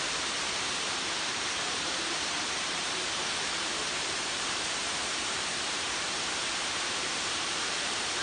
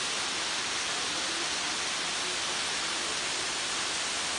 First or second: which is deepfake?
first